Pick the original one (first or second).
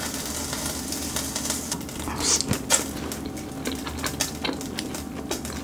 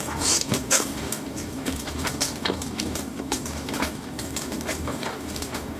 first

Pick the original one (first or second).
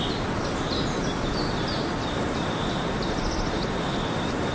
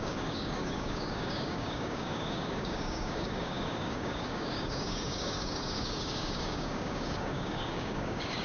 first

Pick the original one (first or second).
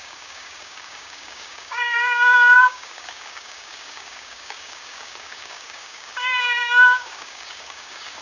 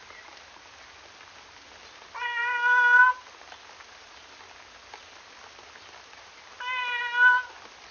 second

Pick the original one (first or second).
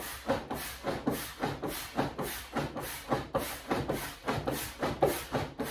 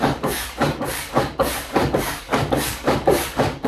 first